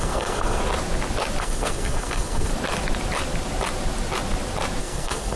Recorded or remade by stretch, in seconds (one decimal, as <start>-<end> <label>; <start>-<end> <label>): 0.0-0.6 remade; 0.6-1.4 recorded; 1.4-2.5 remade; 2.5-4.8 recorded; 4.8-5.4 remade